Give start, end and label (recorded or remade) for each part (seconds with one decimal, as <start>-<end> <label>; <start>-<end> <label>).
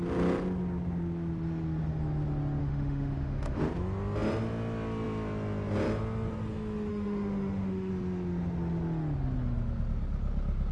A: 0.0-2.6 recorded; 2.6-3.6 remade; 3.6-6.9 recorded; 6.9-7.9 remade; 7.9-10.7 recorded